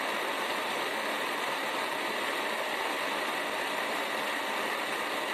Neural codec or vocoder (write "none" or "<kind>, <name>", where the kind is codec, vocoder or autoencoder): none